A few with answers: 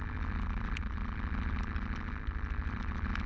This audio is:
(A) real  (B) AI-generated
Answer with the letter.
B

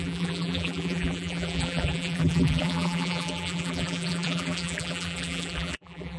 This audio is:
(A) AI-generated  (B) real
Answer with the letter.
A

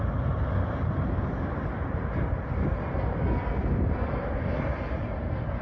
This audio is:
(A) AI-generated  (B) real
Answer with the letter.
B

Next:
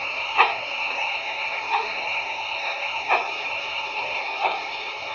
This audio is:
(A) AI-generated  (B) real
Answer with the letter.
A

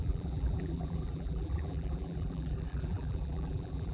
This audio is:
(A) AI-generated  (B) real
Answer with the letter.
A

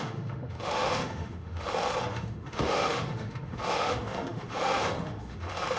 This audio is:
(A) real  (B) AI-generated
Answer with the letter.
B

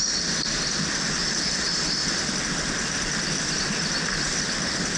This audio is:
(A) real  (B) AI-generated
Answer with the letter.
A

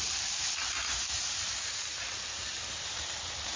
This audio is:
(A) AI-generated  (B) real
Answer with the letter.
A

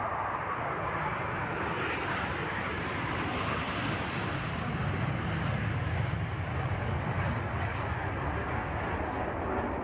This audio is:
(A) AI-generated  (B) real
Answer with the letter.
B